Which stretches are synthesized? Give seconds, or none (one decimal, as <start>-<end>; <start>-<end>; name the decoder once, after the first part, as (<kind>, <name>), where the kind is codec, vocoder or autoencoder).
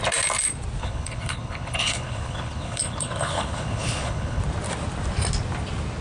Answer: 0.8-4.4 (codec, HILCodec)